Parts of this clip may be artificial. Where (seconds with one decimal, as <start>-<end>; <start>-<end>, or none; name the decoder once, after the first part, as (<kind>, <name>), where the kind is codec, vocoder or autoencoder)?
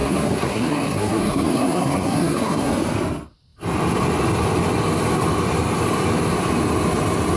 0.0-2.7 (codec, SNAC)